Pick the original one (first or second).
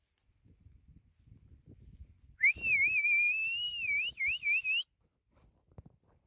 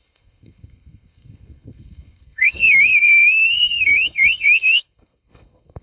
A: first